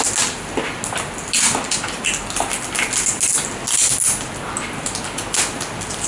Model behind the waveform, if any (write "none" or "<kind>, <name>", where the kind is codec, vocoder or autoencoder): none